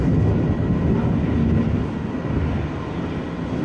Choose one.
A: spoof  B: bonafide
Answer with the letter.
B